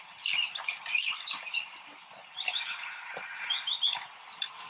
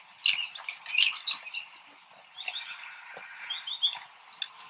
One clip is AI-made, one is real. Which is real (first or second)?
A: second